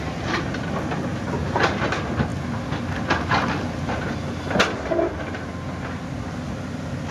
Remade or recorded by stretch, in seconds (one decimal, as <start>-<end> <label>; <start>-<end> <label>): 0.0-7.1 recorded